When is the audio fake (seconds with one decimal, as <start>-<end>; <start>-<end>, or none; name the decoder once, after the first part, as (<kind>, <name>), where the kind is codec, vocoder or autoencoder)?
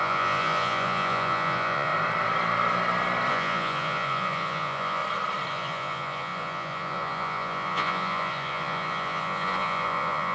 0.0-1.9 (vocoder, Vocos); 3.3-5.0; 5.5-10.3